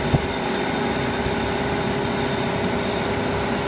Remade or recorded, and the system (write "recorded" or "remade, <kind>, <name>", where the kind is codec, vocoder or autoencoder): recorded